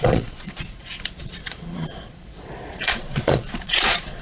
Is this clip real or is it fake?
fake